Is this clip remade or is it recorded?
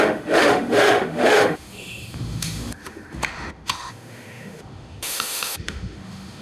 remade